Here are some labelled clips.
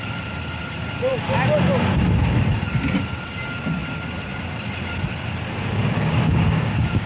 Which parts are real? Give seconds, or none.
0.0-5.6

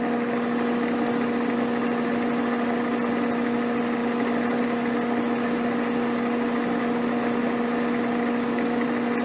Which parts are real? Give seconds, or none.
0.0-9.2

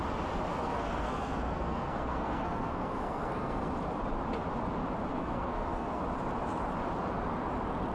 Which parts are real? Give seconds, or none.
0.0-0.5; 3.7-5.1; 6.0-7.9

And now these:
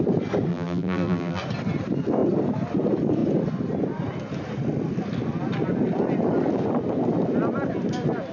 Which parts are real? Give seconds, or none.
0.0-0.5; 1.4-8.3

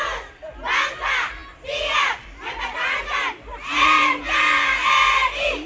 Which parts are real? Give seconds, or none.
0.0-3.5